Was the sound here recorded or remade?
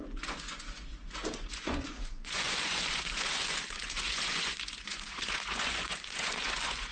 remade